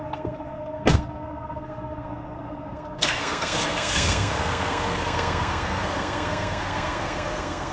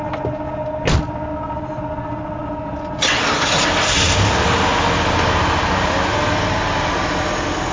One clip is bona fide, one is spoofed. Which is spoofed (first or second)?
first